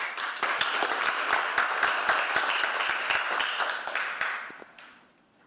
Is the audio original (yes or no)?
yes